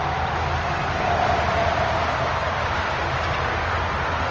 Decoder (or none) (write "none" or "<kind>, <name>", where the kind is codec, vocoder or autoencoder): none